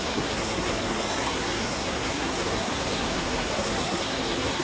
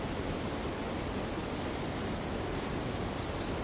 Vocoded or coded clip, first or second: first